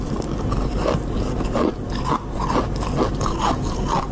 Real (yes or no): yes